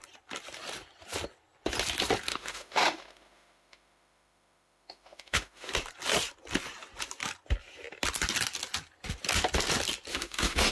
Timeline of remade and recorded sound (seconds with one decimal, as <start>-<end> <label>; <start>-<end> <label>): 0.0-2.3 recorded; 2.3-5.7 remade; 5.7-10.1 recorded; 10.1-10.7 remade